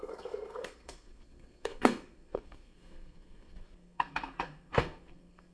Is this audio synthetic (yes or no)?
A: yes